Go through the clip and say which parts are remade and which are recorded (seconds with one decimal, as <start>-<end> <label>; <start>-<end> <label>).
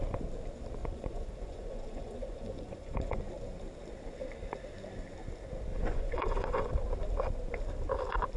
0.0-0.8 recorded; 0.8-3.3 remade; 3.3-5.7 recorded; 5.7-6.7 remade; 6.7-8.4 recorded